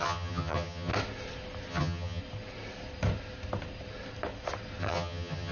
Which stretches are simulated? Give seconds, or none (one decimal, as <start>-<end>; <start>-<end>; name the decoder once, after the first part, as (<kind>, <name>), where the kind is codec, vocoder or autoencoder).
0.0-0.9 (vocoder, HiFi-GAN); 1.7-2.2; 4.8-5.5